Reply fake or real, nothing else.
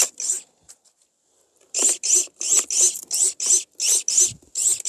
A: real